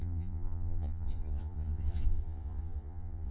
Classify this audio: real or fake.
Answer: fake